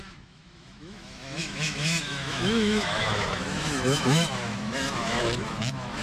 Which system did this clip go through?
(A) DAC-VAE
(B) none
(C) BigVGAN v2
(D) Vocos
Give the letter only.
A